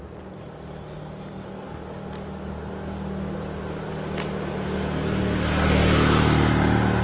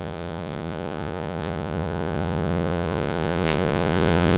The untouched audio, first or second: first